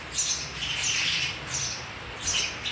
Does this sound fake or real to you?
real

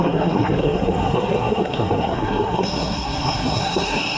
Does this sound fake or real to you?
fake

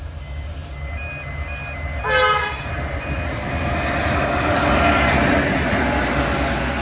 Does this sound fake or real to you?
real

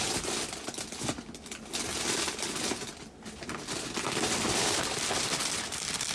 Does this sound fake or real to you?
real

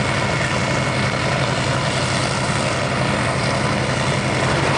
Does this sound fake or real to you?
real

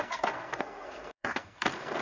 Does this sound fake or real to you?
fake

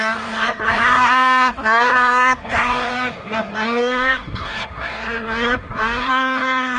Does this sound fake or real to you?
fake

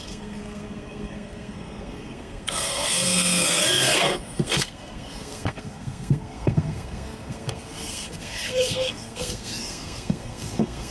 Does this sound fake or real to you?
fake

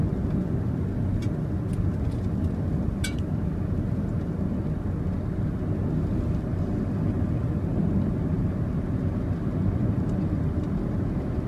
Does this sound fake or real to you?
real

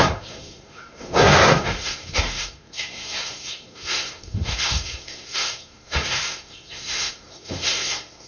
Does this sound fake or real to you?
fake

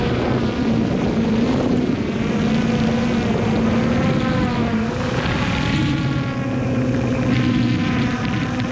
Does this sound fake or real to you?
real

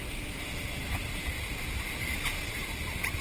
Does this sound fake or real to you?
real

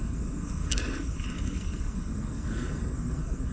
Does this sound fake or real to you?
fake